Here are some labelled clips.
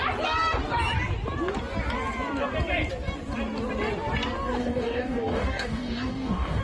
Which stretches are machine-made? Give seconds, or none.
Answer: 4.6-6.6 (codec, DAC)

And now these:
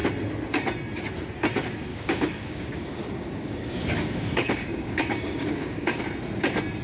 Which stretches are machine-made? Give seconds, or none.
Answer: 1.9-6.0 (codec, DAC)

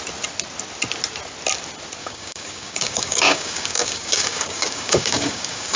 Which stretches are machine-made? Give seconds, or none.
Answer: 2.0-5.8 (codec, DAC)

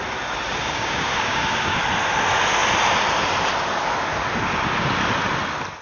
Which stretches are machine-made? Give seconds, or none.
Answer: 0.6-1.8 (codec, DAC)

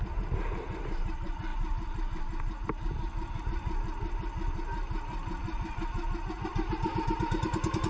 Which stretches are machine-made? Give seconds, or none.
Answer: none

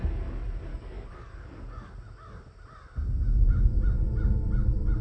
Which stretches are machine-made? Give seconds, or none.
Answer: 0.7-1.9 (codec, DAC)